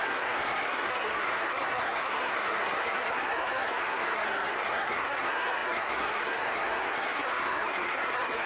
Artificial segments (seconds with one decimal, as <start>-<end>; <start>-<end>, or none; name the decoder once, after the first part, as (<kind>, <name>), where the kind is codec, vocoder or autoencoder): 0.0-8.5 (codec, SNAC)